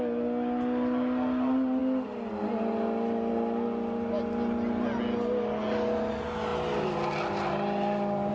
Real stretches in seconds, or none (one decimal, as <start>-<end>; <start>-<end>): 0.0-8.3